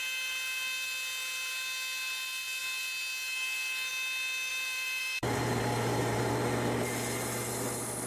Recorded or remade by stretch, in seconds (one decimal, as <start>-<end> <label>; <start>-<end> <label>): 0.0-4.5 recorded; 4.5-6.3 remade; 6.3-8.1 recorded